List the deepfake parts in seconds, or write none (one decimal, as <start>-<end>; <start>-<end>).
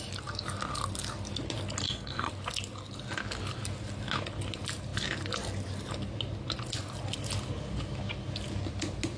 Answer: 1.8-2.3